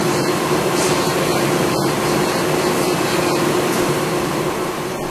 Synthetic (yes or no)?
yes